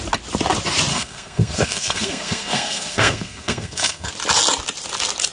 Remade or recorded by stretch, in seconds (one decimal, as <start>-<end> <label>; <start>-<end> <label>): 0.0-0.9 recorded; 0.9-4.1 remade; 4.1-5.3 recorded